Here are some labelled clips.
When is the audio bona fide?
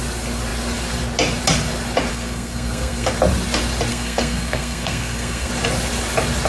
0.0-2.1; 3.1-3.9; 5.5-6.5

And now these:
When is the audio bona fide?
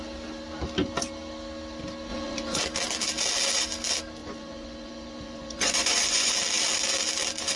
0.0-2.1; 2.6-4.2; 6.3-7.6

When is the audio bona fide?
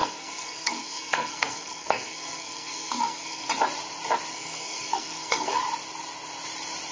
3.5-4.3; 5.6-6.9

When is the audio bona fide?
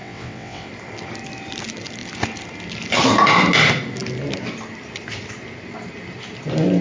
0.7-6.8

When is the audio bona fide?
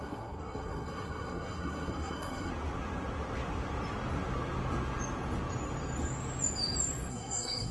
2.5-7.1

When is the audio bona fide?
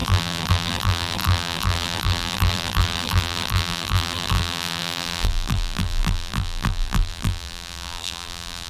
none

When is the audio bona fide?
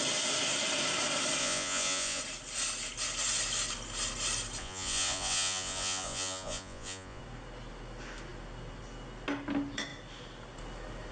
0.0-1.4; 2.2-4.6; 7.2-11.1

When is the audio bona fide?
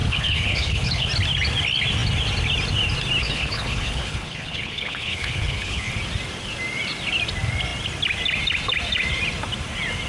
1.1-3.2; 5.9-10.1